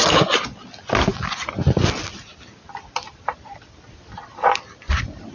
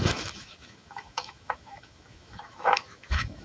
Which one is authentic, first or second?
first